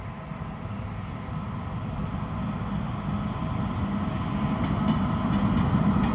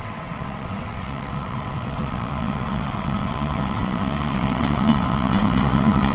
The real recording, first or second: first